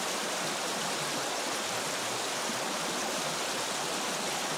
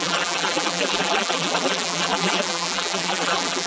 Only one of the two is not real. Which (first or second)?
second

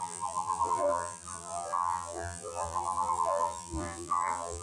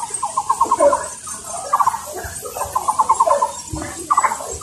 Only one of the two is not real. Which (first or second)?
first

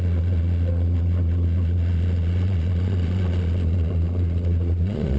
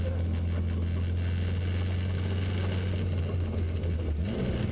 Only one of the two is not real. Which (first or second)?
first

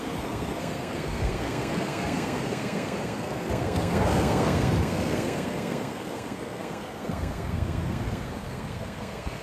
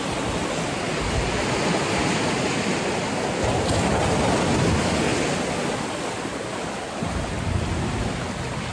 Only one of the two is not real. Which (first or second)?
first